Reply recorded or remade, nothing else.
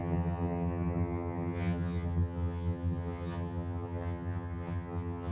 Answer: remade